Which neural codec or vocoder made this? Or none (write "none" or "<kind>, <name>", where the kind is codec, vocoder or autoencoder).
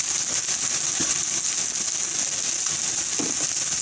none